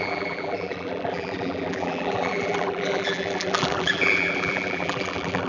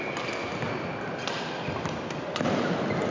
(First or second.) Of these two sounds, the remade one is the first